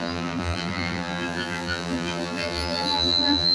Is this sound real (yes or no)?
no